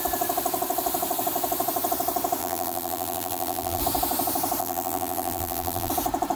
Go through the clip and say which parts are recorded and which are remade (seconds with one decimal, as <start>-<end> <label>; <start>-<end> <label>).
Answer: 0.0-2.4 recorded; 2.4-3.8 remade; 3.8-4.6 recorded; 4.6-5.9 remade; 5.9-6.4 recorded